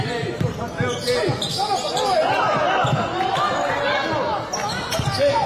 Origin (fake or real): real